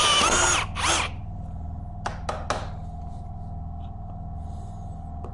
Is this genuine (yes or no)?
yes